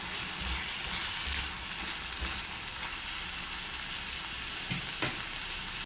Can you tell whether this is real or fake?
real